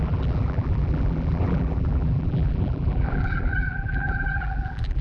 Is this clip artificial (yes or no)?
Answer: yes